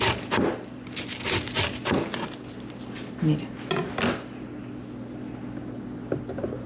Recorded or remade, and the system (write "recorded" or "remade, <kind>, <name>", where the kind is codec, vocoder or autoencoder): recorded